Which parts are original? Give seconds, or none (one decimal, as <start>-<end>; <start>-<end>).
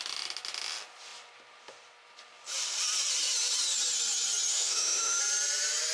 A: 0.0-4.5; 5.2-5.9